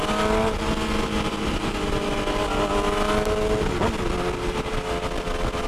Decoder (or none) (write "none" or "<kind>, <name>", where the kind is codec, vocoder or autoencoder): none